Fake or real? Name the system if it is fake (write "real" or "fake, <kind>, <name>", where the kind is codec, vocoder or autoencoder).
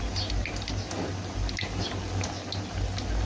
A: real